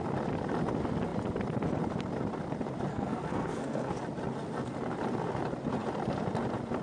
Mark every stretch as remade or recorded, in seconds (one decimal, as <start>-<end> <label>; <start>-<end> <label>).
0.0-2.9 recorded; 2.9-3.9 remade; 3.9-6.8 recorded